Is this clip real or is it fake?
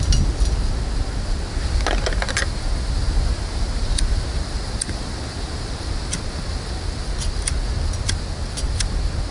real